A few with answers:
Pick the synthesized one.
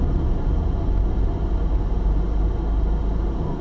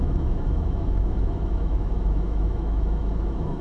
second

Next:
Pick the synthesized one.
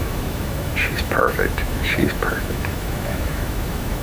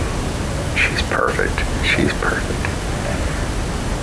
first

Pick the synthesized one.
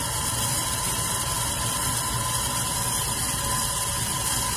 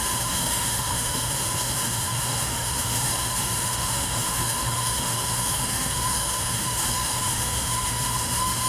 second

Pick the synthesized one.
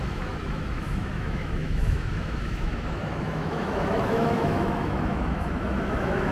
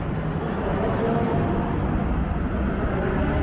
first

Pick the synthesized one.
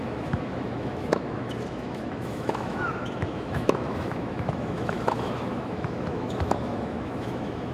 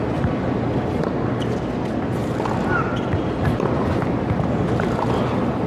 first